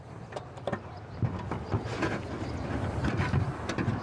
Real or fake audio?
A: real